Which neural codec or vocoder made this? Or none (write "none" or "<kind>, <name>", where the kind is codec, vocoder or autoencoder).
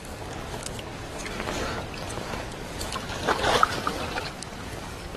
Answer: codec, DAC